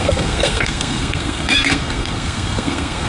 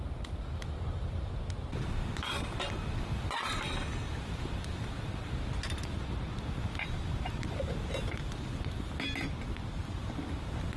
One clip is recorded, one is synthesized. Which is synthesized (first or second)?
first